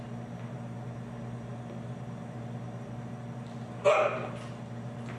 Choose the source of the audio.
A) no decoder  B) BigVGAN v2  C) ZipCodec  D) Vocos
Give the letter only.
A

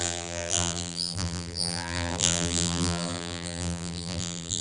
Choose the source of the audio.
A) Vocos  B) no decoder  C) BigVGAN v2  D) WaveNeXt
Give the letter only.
C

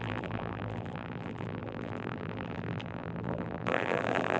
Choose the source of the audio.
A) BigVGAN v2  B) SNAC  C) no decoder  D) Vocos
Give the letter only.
A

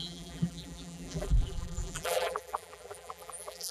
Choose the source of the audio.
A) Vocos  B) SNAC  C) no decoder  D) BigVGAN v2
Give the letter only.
D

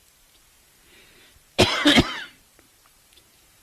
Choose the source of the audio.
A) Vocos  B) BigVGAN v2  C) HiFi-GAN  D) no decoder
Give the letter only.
B